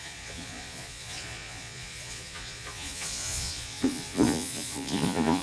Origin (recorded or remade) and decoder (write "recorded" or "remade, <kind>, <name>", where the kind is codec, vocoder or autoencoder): remade, vocoder, Vocos